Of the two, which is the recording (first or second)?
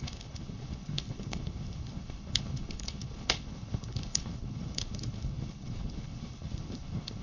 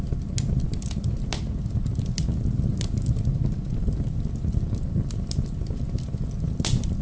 second